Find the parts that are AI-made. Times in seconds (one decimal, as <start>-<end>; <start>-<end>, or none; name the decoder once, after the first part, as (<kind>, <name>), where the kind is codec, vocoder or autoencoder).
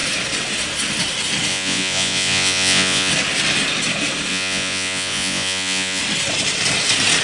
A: 1.5-3.1 (vocoder, Vocos); 4.3-6.0